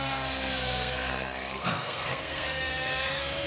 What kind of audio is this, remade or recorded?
remade